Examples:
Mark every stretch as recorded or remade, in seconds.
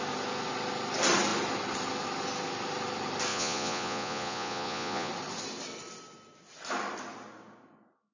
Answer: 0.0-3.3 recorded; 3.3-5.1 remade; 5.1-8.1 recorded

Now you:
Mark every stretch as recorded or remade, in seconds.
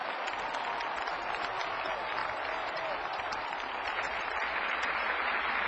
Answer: 0.0-2.2 recorded; 2.2-5.7 remade